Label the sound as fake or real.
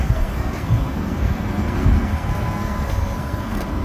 fake